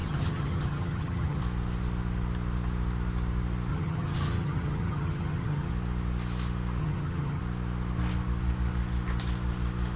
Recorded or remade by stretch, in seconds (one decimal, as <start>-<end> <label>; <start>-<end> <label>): 0.0-1.4 remade; 1.4-3.7 recorded; 3.7-5.7 remade; 5.7-6.8 recorded; 6.8-7.4 remade; 7.4-10.0 recorded